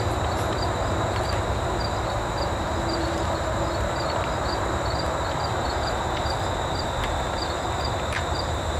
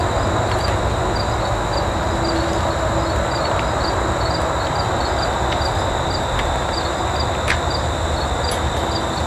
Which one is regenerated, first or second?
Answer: first